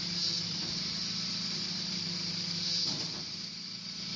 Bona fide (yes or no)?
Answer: no